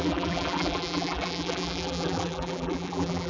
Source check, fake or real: fake